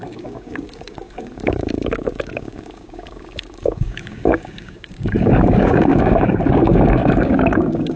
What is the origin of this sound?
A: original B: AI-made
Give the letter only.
B